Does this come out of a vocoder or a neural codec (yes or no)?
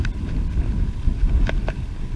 no